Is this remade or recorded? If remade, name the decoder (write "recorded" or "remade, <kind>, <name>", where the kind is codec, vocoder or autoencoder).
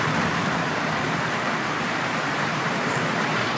remade, vocoder, BigVGAN v2